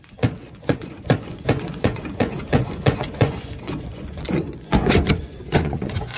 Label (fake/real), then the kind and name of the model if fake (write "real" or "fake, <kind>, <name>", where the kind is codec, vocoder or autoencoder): fake, vocoder, Vocos